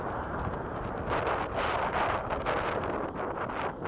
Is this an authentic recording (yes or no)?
yes